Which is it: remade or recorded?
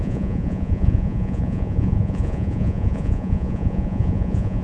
remade